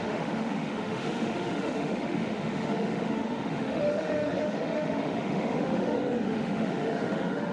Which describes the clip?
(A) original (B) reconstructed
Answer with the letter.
B